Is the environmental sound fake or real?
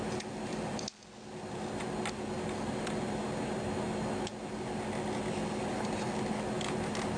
real